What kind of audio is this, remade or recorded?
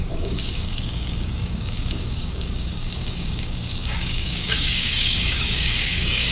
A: remade